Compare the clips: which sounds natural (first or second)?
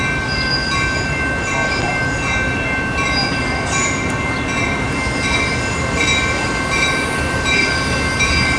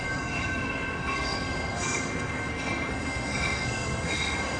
first